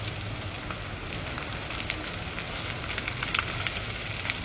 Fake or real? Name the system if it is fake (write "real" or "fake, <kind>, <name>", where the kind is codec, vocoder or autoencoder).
real